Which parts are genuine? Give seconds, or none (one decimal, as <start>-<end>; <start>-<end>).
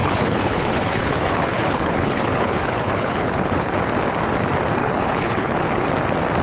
3.7-4.8; 5.9-6.4